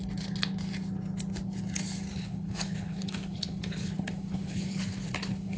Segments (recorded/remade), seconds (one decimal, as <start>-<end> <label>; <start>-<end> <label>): 0.0-2.1 recorded; 2.1-5.6 remade